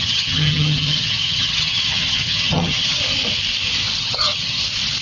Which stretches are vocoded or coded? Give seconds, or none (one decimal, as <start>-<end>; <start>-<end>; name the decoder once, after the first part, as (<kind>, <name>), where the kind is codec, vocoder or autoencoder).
0.0-3.0 (vocoder, HiFi-GAN); 4.0-4.6